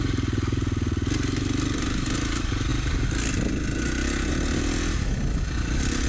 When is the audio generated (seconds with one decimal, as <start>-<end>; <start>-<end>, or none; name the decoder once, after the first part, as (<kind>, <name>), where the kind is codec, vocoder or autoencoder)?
none